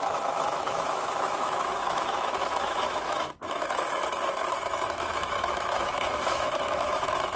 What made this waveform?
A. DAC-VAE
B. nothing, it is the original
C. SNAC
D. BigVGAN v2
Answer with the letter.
A